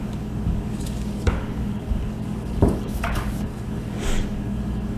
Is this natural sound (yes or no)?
no